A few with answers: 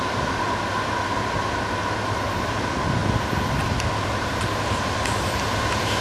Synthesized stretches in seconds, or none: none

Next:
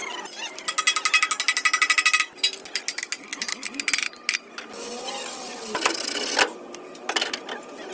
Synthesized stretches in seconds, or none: none

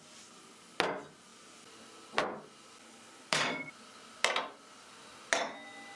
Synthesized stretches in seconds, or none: none

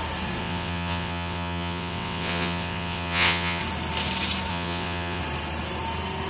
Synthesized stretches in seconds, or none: 0.4-3.6 (vocoder, WaveNeXt); 4.5-5.2

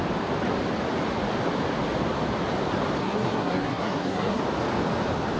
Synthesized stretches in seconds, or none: 3.0-4.4 (codec, SNAC)

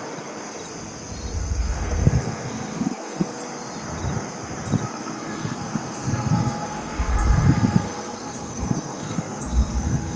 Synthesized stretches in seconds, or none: 1.4-3.4 (codec, SNAC); 4.9-10.2

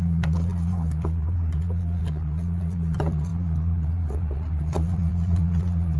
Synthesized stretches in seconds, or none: 0.0-6.0 (vocoder, Vocos)

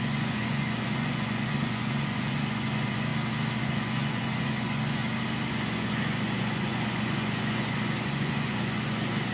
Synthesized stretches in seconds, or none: 0.0-3.1 (vocoder, Vocos); 3.6-5.0; 5.5-9.3